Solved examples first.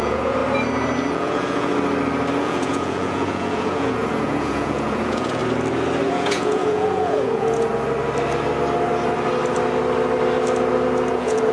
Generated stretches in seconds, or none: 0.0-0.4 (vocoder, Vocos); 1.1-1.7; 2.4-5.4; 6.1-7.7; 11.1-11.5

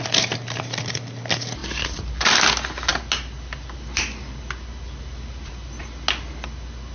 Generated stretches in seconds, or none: none